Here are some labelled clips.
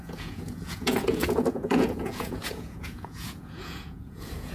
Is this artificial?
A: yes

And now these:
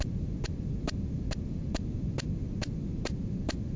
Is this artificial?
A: yes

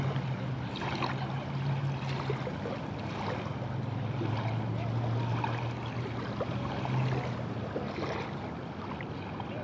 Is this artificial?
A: no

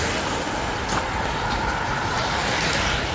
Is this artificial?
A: no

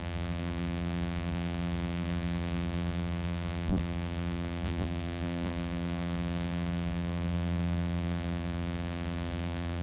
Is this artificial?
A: yes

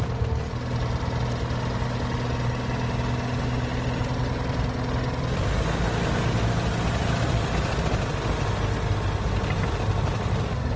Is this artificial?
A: no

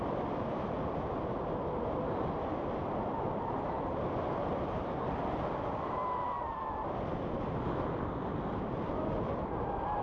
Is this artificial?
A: no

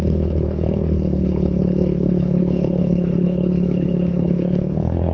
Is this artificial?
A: yes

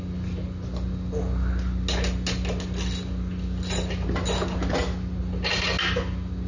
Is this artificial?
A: no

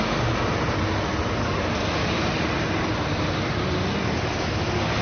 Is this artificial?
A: no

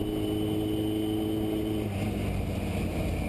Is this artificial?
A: no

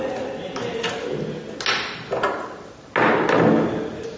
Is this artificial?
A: no